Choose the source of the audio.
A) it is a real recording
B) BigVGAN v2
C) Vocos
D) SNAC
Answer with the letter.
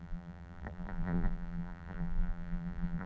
B